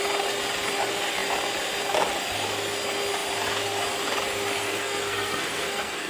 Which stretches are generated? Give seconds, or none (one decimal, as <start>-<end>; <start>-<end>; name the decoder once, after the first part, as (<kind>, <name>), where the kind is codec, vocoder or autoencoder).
4.6-6.1 (codec, SNAC)